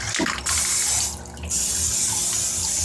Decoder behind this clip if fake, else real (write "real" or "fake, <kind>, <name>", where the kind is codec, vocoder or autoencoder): real